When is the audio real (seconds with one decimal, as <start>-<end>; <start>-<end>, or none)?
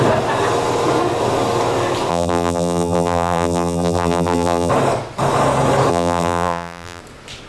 0.0-2.1; 4.7-5.9; 7.0-7.5